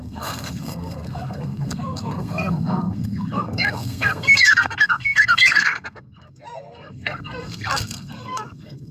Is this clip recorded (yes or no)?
no